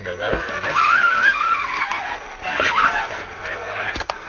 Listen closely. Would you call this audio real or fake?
fake